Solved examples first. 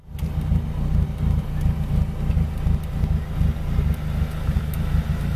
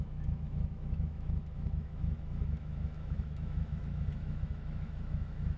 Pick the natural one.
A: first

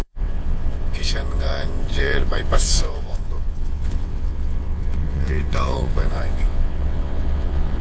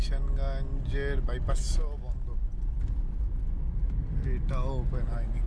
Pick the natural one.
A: second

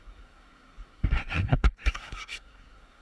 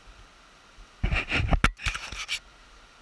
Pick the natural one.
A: second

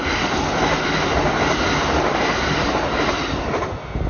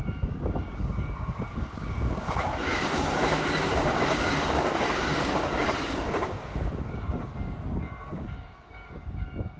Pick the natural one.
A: first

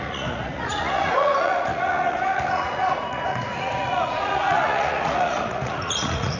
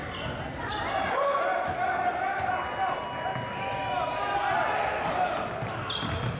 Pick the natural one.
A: second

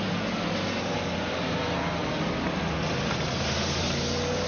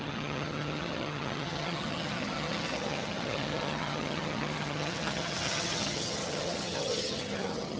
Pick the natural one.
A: first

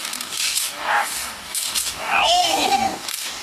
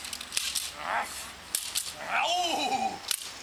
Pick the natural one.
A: second